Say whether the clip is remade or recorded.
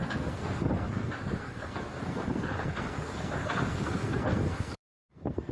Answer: remade